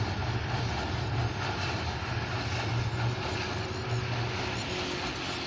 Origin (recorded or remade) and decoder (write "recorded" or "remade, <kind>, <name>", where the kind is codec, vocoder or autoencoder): recorded